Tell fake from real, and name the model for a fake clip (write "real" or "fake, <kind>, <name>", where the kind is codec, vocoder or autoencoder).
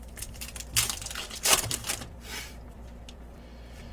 fake, vocoder, BigVGAN v2